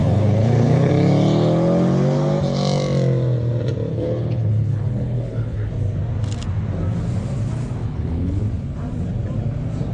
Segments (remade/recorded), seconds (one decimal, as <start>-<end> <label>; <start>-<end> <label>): 0.0-0.9 remade; 0.9-3.9 recorded; 3.9-5.7 remade; 5.7-7.8 recorded; 7.8-8.4 remade; 8.4-9.9 recorded